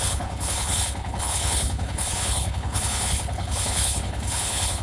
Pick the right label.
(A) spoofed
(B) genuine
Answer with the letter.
A